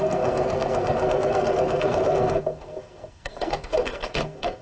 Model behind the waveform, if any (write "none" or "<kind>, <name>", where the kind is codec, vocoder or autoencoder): codec, SNAC